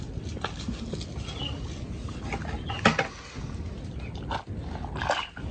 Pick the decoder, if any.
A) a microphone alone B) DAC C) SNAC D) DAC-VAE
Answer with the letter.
A